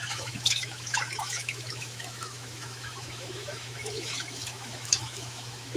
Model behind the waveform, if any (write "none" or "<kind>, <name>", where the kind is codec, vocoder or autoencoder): autoencoder, DAC-VAE